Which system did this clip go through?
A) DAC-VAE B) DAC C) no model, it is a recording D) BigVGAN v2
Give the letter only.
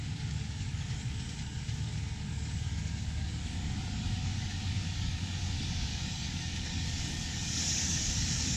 B